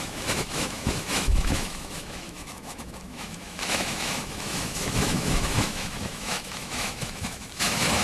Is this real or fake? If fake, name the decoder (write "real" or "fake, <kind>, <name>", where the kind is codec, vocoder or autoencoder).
fake, autoencoder, DAC-VAE